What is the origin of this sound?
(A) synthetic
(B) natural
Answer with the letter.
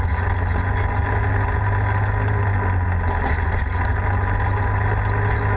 B